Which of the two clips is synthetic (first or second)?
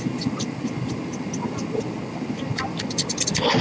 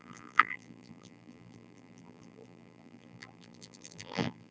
second